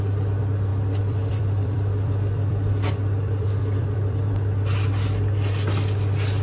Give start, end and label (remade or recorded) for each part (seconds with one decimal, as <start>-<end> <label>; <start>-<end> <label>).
0.0-0.7 recorded; 0.7-4.3 remade; 4.3-6.4 recorded